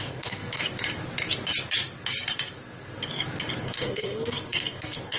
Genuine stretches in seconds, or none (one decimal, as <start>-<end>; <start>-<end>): 0.5-3.6